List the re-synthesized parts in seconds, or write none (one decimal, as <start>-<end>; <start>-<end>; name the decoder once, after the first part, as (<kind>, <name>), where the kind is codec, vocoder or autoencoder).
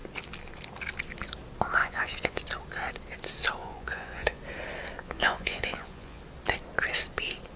1.8-2.4 (vocoder, Vocos); 3.6-4.4; 5.0-6.2